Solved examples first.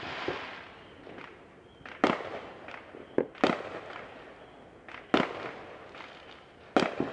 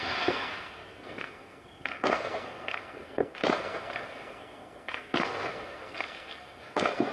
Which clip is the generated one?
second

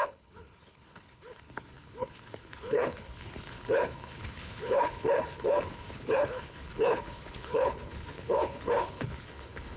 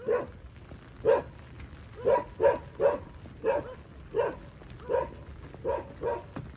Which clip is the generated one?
first